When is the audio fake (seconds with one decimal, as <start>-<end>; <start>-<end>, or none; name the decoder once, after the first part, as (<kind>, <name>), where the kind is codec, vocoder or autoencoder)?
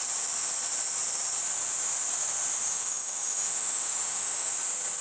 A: 2.7-4.5 (autoencoder, DAC-VAE)